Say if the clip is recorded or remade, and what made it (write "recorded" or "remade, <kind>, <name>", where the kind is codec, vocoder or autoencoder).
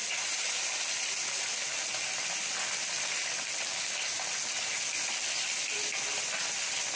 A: recorded